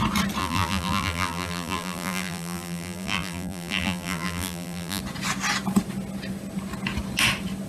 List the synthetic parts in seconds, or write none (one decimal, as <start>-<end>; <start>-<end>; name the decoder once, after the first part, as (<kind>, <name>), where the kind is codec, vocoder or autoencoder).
0.4-5.0 (vocoder, BigVGAN v2)